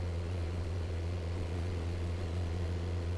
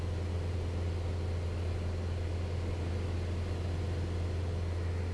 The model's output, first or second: first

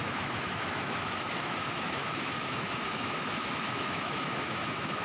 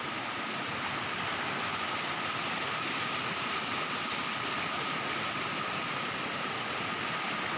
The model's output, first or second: first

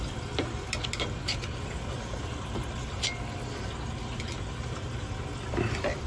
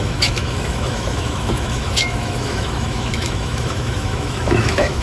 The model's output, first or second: second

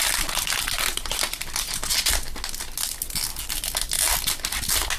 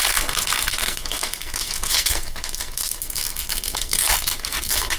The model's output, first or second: second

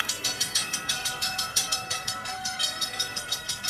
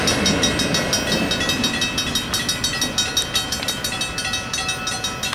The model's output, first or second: first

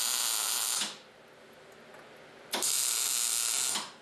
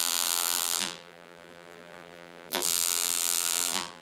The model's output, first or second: second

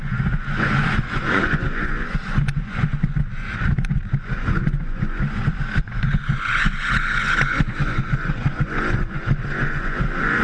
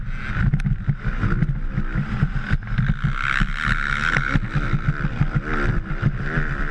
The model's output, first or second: first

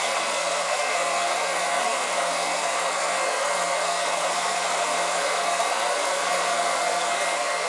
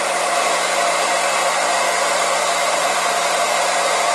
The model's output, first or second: first